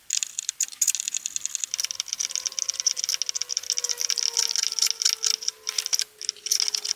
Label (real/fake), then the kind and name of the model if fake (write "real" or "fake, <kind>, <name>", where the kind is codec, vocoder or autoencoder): real